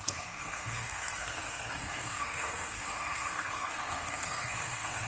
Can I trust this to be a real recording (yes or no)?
no